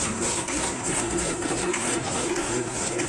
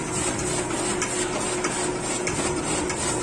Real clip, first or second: second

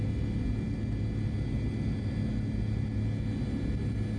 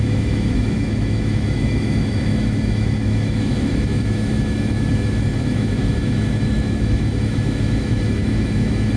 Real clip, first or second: first